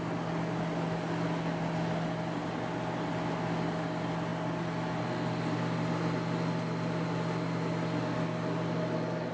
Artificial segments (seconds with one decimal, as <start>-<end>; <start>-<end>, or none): none